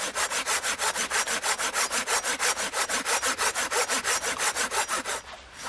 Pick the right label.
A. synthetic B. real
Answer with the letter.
B